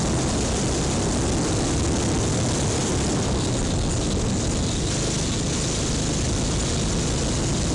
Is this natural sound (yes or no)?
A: yes